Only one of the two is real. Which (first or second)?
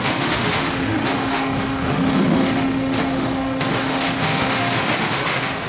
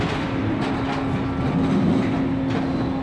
second